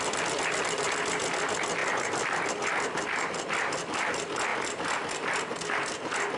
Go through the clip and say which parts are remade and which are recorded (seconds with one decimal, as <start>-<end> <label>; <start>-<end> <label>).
0.0-6.4 recorded